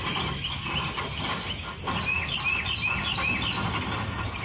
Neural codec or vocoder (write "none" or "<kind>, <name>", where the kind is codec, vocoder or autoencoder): none